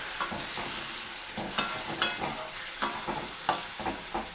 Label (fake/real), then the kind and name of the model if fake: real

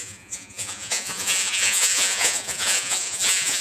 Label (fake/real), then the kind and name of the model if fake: fake, vocoder, Vocos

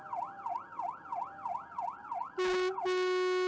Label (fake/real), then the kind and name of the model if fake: real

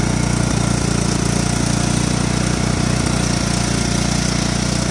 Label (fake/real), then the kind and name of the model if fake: real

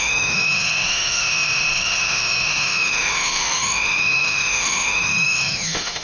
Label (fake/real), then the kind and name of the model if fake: fake, autoencoder, DAC-VAE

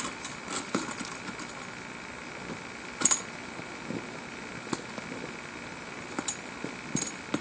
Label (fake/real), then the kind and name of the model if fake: real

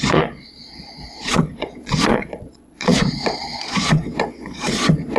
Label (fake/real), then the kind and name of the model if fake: fake, vocoder, Vocos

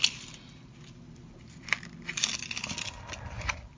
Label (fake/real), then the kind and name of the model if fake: real